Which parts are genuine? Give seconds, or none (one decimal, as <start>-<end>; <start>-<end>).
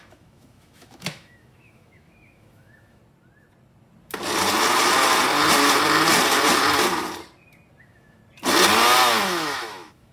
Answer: 3.0-7.8; 8.2-9.2